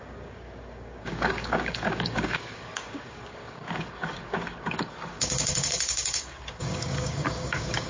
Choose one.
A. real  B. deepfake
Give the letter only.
B